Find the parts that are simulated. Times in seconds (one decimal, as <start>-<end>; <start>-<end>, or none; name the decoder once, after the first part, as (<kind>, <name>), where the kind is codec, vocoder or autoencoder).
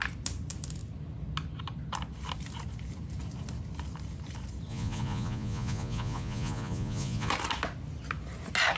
4.7-7.3 (vocoder, Vocos)